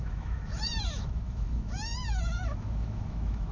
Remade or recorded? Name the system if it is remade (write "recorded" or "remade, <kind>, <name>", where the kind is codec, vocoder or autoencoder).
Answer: remade, autoencoder, DAC-VAE